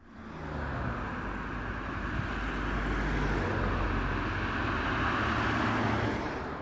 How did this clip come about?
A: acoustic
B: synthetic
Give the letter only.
A